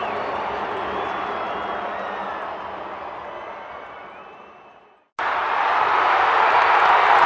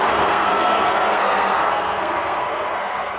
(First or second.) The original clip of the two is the first